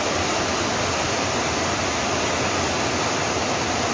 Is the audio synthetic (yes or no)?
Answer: no